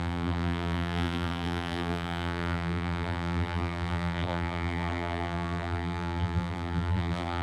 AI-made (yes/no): yes